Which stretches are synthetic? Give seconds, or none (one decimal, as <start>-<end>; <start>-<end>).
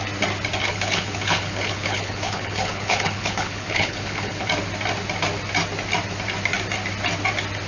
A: 0.6-4.5